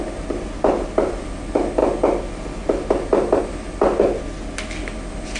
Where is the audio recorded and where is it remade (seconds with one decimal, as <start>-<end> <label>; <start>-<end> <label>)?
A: 0.0-5.4 recorded